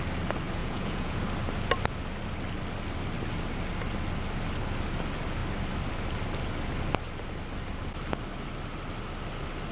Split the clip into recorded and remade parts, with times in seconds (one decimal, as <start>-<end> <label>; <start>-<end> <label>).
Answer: 0.0-0.6 recorded; 0.6-1.2 remade; 1.2-9.7 recorded